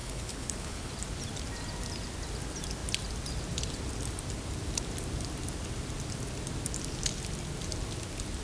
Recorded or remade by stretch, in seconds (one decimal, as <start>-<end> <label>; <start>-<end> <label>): 0.0-0.9 remade; 0.9-8.4 recorded